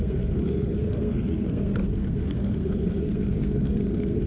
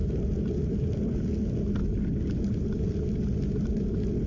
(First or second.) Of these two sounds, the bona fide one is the second